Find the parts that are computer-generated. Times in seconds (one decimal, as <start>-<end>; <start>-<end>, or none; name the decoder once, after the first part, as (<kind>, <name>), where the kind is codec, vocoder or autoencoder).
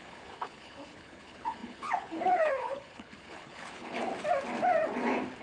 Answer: 0.0-4.0 (codec, HILCodec)